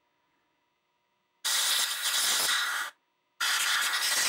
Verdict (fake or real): real